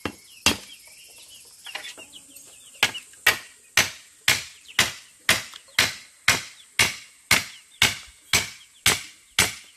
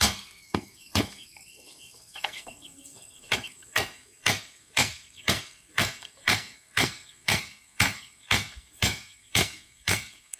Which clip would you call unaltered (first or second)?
first